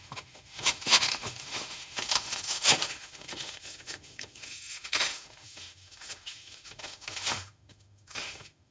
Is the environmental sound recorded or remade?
remade